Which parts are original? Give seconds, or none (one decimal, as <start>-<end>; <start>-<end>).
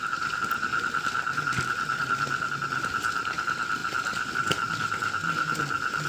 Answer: 0.0-6.1